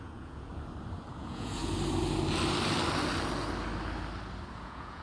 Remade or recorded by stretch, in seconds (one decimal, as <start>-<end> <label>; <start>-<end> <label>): 0.0-0.5 remade; 0.5-1.1 recorded; 1.1-1.6 remade; 1.6-4.5 recorded; 4.5-5.0 remade